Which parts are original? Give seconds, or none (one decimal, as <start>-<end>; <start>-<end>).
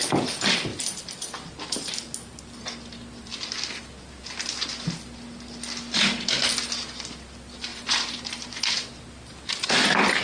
0.0-7.7; 8.9-10.2